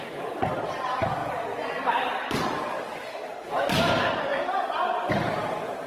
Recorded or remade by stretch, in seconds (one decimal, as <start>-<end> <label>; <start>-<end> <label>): 0.0-5.9 recorded